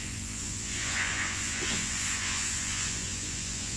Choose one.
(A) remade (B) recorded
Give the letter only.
A